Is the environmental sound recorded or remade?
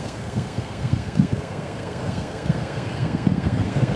remade